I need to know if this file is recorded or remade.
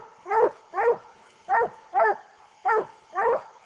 remade